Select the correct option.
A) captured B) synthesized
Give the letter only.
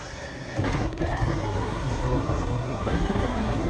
B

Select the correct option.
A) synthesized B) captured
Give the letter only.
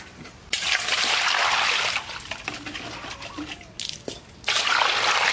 B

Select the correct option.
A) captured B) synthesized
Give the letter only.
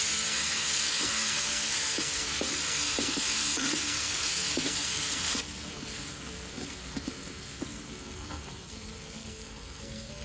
B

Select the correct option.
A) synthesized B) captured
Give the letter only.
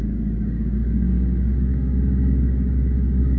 A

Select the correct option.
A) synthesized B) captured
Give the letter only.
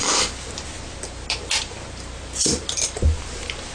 B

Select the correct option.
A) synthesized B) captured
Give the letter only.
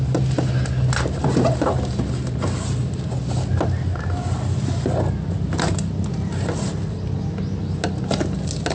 B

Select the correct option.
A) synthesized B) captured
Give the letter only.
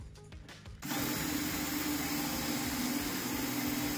B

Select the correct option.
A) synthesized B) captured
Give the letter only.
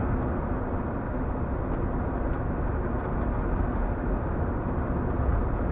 B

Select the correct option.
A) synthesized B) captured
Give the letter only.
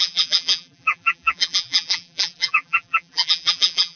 A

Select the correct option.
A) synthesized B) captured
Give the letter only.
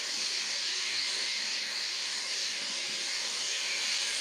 A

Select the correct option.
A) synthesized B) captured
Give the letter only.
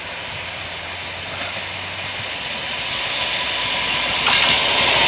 B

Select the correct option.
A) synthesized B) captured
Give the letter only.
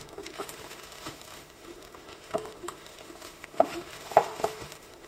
A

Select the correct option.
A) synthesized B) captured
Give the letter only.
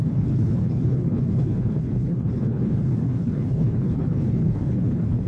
A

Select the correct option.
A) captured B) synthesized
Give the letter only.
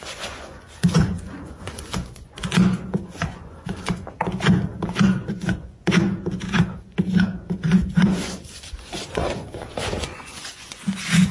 B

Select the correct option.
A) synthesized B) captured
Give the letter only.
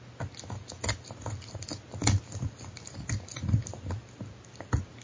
B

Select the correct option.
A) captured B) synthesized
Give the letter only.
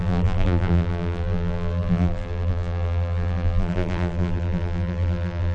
B